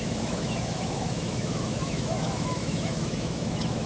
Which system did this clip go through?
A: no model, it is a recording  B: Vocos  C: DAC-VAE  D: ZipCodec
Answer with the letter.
C